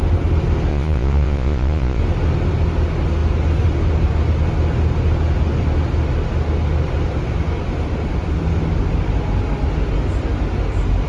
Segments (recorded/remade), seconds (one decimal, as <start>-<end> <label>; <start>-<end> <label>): 0.0-0.7 recorded; 0.7-2.0 remade; 2.0-11.1 recorded